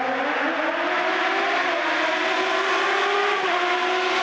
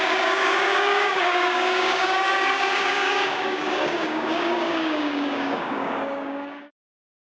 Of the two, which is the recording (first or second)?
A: first